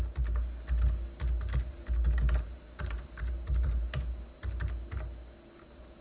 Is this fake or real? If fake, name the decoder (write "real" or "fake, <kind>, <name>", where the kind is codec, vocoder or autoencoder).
real